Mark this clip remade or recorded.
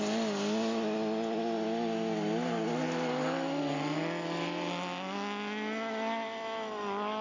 recorded